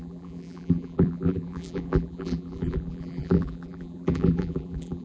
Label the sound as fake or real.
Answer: fake